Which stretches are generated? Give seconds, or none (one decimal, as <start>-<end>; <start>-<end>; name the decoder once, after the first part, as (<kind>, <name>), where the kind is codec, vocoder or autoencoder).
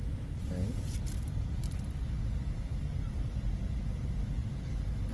none